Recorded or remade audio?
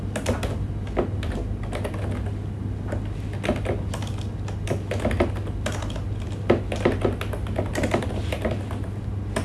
recorded